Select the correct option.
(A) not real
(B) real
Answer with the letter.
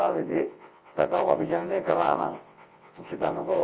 A